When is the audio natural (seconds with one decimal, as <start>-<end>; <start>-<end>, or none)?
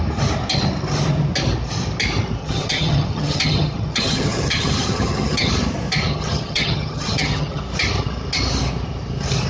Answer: 0.0-2.4; 5.5-6.1; 7.6-9.5